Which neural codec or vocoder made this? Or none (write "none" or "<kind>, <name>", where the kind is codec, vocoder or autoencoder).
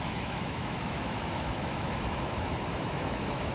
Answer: autoencoder, DAC-VAE